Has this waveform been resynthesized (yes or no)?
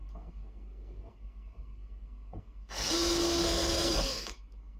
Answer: yes